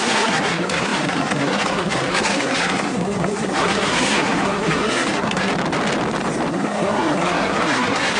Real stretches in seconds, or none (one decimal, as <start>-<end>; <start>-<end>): 5.5-6.5